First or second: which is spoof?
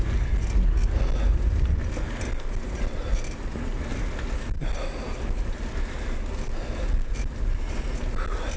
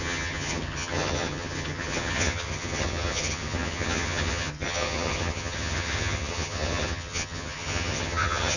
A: second